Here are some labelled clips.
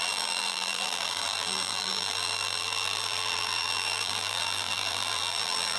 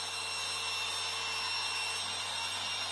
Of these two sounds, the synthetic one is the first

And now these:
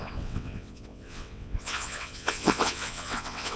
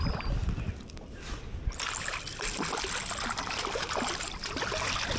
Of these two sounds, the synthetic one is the first